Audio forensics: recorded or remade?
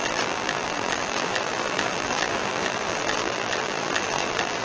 remade